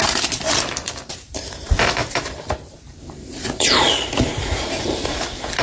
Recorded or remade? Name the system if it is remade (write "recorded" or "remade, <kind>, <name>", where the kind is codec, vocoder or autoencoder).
remade, vocoder, BigVGAN v2